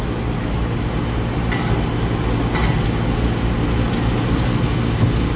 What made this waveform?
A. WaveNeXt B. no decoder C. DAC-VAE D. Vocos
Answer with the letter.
B